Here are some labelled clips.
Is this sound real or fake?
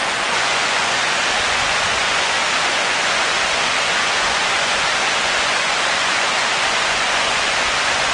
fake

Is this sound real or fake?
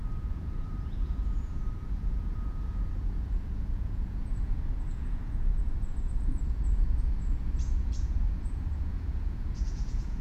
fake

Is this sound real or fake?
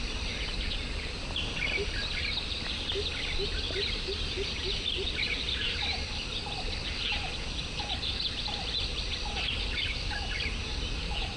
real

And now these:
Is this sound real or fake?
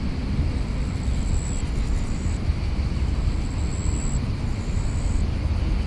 real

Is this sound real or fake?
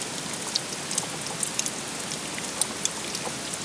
real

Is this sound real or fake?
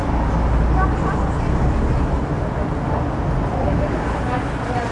real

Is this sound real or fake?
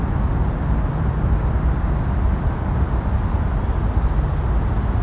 real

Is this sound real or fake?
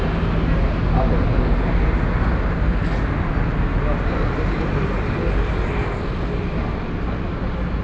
real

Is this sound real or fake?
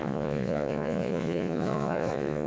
fake